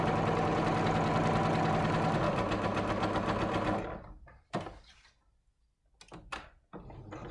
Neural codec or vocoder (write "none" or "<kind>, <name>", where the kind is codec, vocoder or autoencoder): none